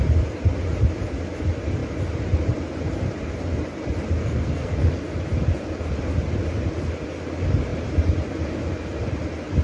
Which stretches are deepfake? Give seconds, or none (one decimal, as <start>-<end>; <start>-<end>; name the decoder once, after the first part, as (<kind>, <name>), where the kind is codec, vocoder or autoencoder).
4.2-4.9 (codec, SNAC)